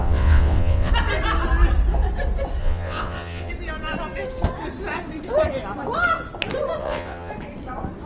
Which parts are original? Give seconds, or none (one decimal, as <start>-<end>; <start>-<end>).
0.9-2.6; 3.5-6.8; 7.3-8.1